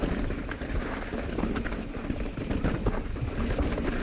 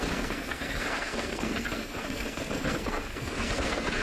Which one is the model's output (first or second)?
second